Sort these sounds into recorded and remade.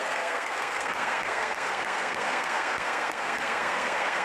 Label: remade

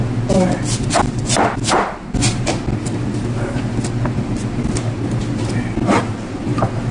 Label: recorded